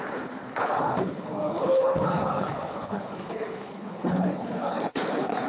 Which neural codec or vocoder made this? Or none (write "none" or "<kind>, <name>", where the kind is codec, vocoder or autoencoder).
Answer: codec, HILCodec